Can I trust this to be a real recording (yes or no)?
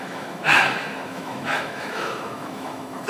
no